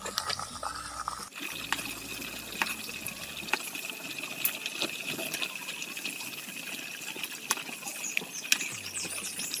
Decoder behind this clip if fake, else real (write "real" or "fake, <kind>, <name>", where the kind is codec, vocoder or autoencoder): real